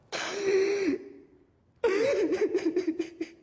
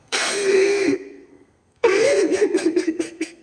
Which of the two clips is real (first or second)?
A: first